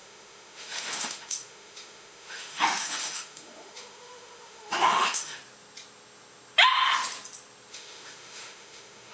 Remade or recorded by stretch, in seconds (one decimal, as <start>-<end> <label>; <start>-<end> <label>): 0.0-5.4 remade; 5.4-7.7 recorded; 7.7-9.1 remade